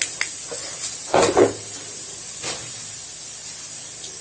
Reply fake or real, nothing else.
real